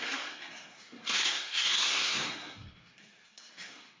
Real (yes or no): no